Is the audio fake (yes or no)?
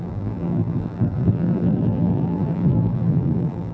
yes